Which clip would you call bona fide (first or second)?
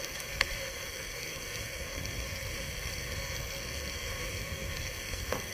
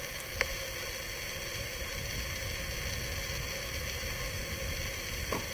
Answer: second